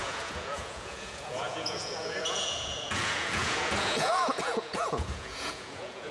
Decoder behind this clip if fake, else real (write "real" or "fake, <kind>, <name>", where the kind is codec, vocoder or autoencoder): fake, vocoder, Vocos